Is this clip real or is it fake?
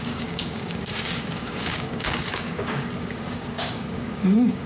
fake